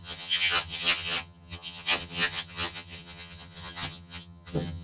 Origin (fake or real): fake